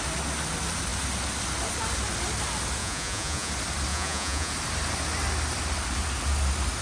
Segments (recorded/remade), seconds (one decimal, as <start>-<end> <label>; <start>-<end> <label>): 0.0-2.8 recorded; 2.8-3.5 remade; 3.5-3.9 recorded; 3.9-4.5 remade; 4.5-6.8 recorded

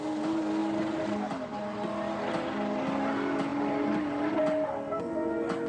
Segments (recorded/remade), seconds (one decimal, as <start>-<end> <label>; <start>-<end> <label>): 0.0-5.7 recorded

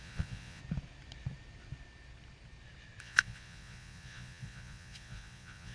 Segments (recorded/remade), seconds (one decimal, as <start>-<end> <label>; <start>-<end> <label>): 0.0-0.6 remade; 0.6-3.0 recorded; 3.0-5.7 remade

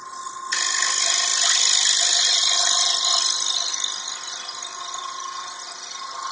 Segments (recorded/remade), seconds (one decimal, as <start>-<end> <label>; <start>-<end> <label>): 0.0-6.3 recorded

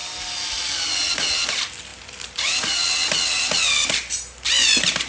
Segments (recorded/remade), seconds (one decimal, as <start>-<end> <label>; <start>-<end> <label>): 0.0-5.1 recorded